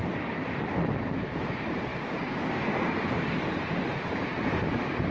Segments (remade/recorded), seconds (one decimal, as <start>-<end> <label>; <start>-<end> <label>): 0.0-1.9 recorded; 1.9-2.6 remade; 2.6-5.1 recorded